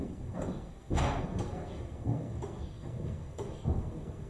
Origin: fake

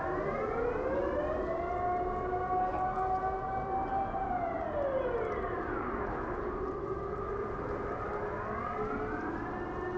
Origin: real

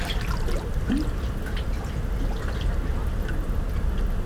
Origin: real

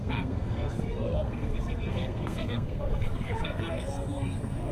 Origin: fake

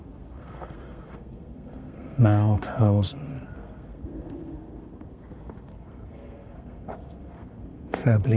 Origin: fake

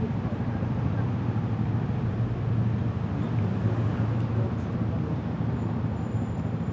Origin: real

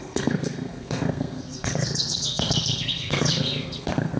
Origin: fake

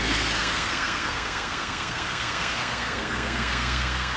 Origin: fake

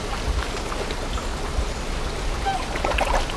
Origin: real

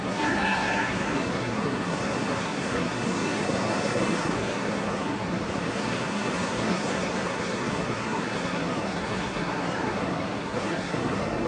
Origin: fake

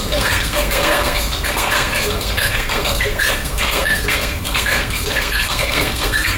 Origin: fake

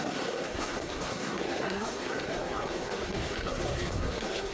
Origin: fake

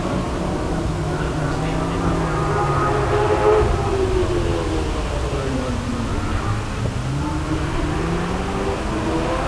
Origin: real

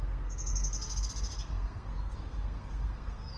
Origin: fake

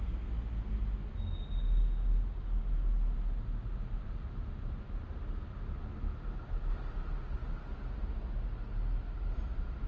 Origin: real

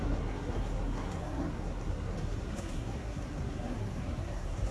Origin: fake